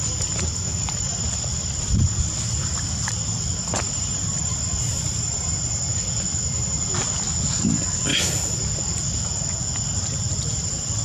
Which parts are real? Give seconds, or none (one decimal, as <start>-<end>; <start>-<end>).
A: 0.0-0.7; 5.8-11.0